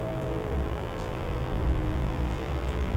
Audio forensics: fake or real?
fake